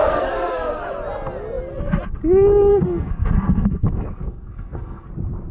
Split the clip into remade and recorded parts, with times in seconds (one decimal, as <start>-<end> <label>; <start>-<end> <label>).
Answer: 0.0-0.8 remade; 0.8-2.7 recorded; 2.7-5.1 remade; 5.1-5.5 recorded

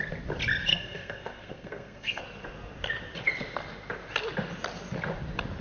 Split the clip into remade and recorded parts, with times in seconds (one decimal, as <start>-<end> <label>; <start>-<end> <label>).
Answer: 0.0-0.7 recorded; 0.7-2.2 remade; 2.2-5.6 recorded

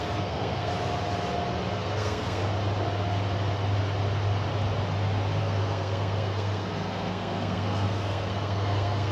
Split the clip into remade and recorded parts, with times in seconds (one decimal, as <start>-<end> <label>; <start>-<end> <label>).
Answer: 0.0-0.7 remade; 0.7-1.7 recorded; 1.7-2.4 remade; 2.4-5.4 recorded; 5.4-9.1 remade

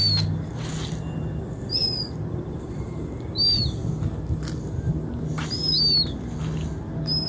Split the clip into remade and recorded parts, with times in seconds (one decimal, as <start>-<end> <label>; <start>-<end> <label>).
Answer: 0.0-7.3 recorded

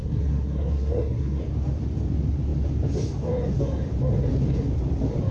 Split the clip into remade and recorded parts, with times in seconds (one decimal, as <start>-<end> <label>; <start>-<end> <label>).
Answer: 0.0-1.4 remade; 1.4-5.3 recorded

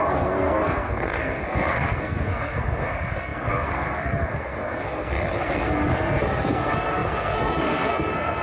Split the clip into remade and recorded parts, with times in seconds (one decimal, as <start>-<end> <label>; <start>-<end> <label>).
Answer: 0.0-8.4 remade

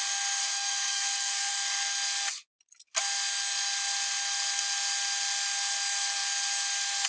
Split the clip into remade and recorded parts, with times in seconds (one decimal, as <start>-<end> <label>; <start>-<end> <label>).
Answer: 0.0-0.4 recorded; 0.4-1.5 remade; 1.5-7.1 recorded

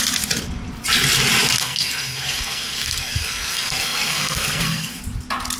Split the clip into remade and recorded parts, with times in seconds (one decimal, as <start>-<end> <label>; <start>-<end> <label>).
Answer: 0.0-1.6 recorded; 1.6-5.0 remade; 5.0-5.6 recorded